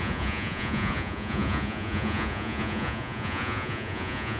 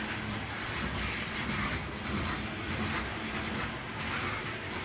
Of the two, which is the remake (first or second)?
first